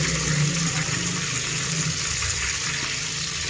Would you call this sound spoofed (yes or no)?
no